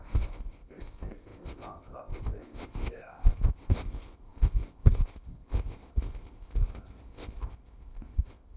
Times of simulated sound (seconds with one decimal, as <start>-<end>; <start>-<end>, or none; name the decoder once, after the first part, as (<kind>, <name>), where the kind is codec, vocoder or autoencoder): 0.0-8.6 (codec, ZipCodec)